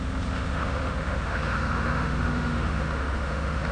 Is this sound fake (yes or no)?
yes